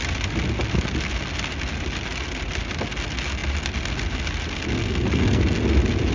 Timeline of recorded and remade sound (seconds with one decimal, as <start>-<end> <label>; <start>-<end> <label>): 0.0-4.8 recorded; 4.8-5.4 remade; 5.4-6.1 recorded